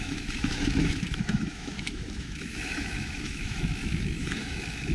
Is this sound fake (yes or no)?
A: yes